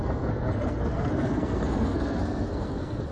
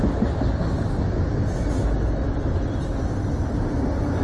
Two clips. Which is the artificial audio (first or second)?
first